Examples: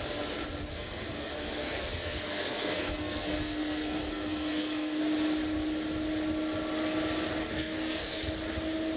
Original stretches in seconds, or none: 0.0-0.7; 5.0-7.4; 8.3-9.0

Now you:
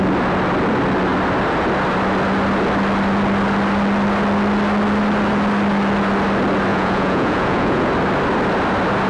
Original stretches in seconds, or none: 0.0-6.7; 7.9-9.1

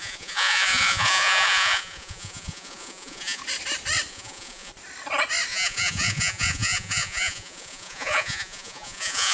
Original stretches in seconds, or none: 3.4-4.1; 4.7-5.5